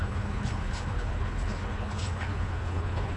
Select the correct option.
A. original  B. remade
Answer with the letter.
B